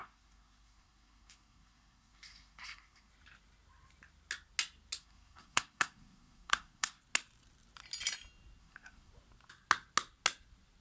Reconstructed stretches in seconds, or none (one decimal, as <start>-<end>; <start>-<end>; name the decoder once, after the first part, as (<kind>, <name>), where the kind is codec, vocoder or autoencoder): 0.0-3.1 (codec, SNAC); 5.0-7.0; 8.6-9.1